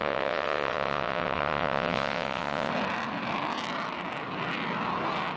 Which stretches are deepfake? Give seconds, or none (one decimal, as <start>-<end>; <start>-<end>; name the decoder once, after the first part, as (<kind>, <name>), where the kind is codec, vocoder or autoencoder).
0.0-2.7 (vocoder, WaveNeXt)